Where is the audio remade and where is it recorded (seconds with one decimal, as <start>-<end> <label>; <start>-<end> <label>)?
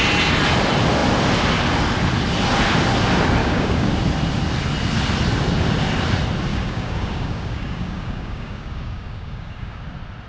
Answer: 0.0-3.4 recorded; 3.4-3.9 remade; 3.9-6.5 recorded; 6.5-9.8 remade; 9.8-10.3 recorded